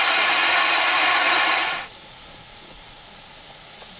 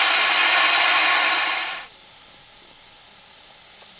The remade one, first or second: first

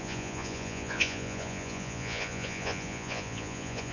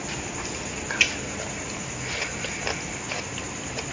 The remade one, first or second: first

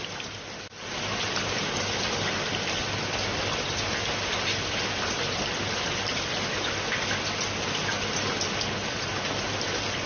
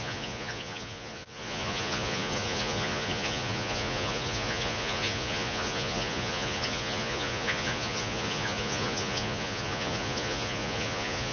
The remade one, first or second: second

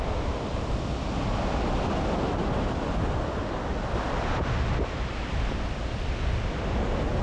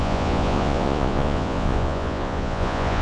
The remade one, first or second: second